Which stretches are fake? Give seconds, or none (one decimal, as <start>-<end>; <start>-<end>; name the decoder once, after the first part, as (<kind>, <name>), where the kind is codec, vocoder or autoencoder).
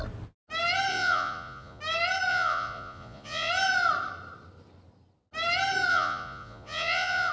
0.9-1.8 (vocoder, Vocos); 2.3-3.5; 5.9-7.3